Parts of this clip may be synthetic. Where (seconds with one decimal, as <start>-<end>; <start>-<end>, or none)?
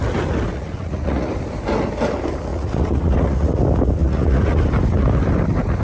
0.5-1.3; 2.5-3.6; 4.0-4.6